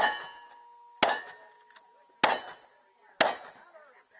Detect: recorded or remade recorded